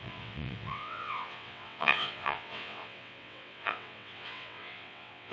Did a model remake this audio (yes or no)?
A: yes